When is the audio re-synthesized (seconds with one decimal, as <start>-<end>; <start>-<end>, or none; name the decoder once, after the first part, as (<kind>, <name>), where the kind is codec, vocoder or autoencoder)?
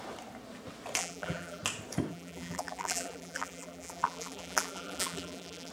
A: 1.0-1.6 (vocoder, BigVGAN v2); 2.1-5.7